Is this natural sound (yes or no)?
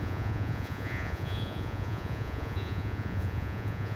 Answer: no